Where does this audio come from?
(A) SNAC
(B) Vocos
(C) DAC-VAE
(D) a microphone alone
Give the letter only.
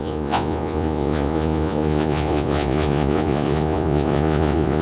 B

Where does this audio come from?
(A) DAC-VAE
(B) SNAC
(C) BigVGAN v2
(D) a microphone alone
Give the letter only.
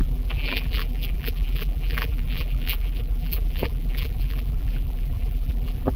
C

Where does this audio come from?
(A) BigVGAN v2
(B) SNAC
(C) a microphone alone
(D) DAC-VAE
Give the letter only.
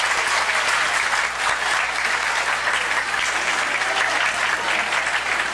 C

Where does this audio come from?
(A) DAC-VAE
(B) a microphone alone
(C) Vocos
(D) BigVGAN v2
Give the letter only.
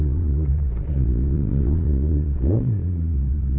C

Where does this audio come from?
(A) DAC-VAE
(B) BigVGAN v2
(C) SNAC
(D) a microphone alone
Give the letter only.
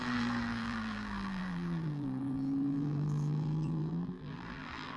B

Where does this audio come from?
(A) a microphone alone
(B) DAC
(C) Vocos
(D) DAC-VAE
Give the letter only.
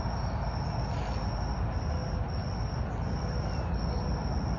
A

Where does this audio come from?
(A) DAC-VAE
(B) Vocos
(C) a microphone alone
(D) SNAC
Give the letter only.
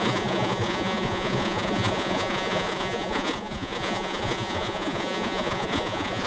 B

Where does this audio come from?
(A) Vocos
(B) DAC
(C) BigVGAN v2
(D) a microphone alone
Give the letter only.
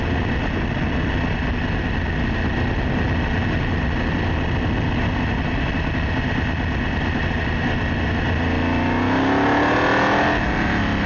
D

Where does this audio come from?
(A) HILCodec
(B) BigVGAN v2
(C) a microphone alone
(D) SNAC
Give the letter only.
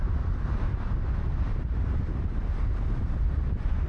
C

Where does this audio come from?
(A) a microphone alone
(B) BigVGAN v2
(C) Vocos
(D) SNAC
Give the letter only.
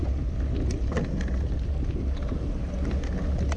A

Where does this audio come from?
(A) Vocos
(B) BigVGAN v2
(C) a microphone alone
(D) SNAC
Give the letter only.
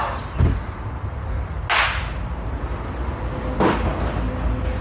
C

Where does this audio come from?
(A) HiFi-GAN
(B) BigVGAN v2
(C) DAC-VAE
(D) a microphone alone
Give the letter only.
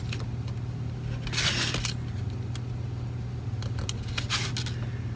D